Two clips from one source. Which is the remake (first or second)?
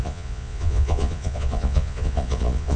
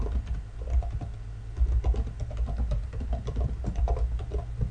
first